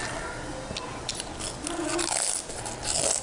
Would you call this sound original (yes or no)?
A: yes